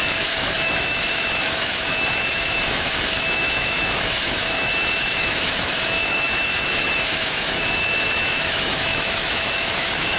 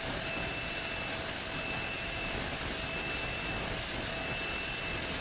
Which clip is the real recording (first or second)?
second